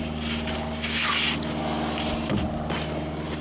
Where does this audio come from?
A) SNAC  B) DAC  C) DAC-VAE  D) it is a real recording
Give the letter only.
D